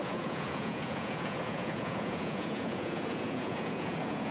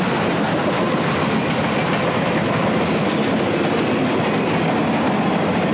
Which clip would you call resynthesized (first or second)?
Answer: first